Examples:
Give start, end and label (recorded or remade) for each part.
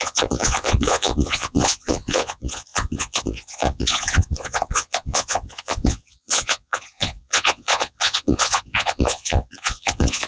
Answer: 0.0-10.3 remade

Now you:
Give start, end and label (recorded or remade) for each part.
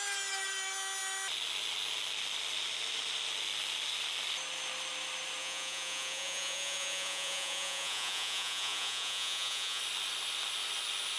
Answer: 0.0-5.4 recorded; 5.4-9.8 remade; 9.8-11.2 recorded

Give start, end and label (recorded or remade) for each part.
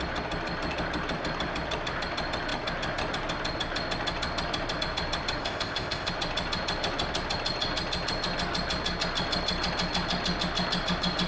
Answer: 0.0-5.4 recorded; 5.4-6.1 remade; 6.1-11.3 recorded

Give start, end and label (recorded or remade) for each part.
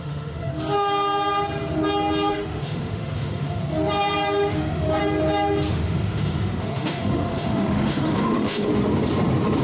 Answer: 0.0-0.5 remade; 0.5-2.3 recorded; 2.3-3.6 remade; 3.6-4.5 recorded; 4.5-5.0 remade; 5.0-5.7 recorded; 5.7-8.7 remade; 8.7-9.6 recorded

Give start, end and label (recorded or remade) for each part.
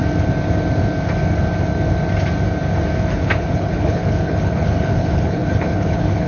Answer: 0.0-3.1 recorded; 3.1-6.3 remade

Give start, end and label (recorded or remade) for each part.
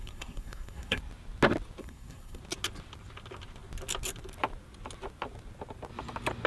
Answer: 0.0-1.0 remade; 1.0-1.8 recorded; 1.8-2.4 remade; 2.4-6.5 recorded